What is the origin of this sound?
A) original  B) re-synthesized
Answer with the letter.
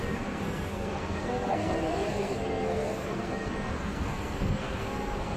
B